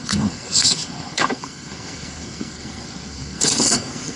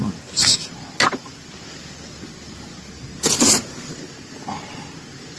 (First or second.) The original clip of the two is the second